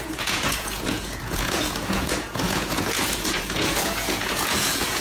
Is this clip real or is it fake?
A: fake